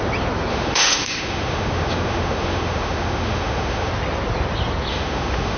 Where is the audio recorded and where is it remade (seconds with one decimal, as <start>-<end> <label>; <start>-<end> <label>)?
0.0-0.5 recorded; 0.5-3.9 remade; 3.9-4.9 recorded; 4.9-5.6 remade